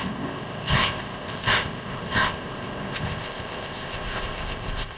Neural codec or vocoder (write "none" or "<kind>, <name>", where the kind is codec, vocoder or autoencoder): codec, ZipCodec